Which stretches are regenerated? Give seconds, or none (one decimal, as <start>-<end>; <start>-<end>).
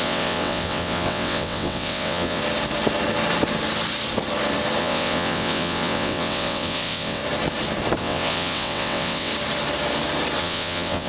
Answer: 0.0-2.4; 4.8-7.2; 8.0-9.3; 10.4-11.1